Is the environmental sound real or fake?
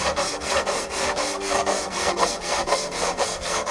fake